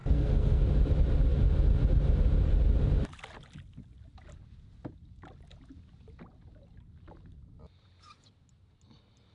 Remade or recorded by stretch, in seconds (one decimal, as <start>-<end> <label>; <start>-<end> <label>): 0.0-0.6 remade; 0.6-9.3 recorded